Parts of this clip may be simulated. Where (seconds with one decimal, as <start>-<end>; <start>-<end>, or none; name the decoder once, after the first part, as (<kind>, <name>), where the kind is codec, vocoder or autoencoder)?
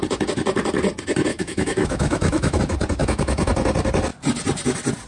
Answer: 1.3-2.6 (autoencoder, DAC-VAE); 3.0-3.5